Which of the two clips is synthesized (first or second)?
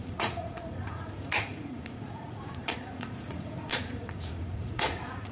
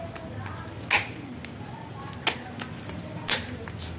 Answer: first